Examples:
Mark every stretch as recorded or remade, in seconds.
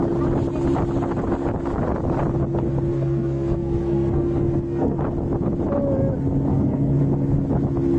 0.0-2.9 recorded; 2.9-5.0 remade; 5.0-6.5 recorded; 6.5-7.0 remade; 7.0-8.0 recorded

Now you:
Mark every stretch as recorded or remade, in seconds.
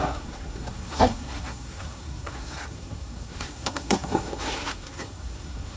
0.0-5.8 remade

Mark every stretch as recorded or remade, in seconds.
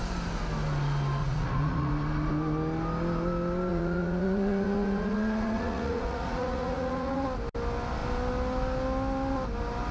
0.0-1.2 recorded; 1.2-1.9 remade; 1.9-3.7 recorded; 3.7-7.2 remade; 7.2-9.9 recorded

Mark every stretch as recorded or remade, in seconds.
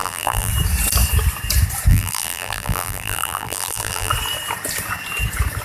0.0-0.5 remade; 0.5-1.9 recorded; 1.9-4.1 remade; 4.1-5.6 recorded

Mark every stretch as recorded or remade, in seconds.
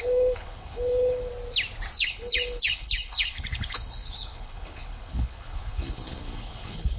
0.0-1.3 remade; 1.3-2.0 recorded; 2.0-7.0 remade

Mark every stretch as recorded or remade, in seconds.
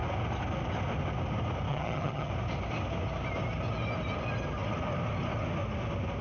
0.0-1.7 recorded; 1.7-2.3 remade; 2.3-6.2 recorded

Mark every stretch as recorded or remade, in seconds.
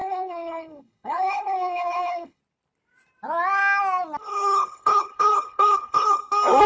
0.0-2.4 remade; 2.4-4.2 recorded; 4.2-6.2 remade; 6.2-6.7 recorded